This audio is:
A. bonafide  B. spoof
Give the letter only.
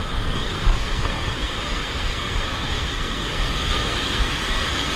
B